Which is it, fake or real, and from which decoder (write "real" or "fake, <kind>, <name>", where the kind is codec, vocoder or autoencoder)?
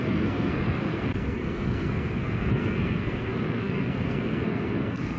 fake, codec, SNAC